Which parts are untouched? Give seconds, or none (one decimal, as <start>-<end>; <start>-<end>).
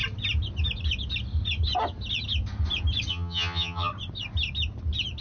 0.0-3.1; 3.9-5.2